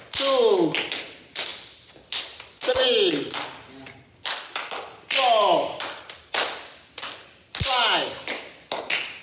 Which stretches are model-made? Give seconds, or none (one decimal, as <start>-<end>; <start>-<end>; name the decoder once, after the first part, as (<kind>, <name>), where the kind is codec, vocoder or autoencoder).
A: none